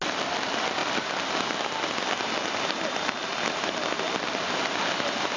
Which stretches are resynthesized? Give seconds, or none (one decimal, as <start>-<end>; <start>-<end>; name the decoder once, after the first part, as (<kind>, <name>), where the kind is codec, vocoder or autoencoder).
none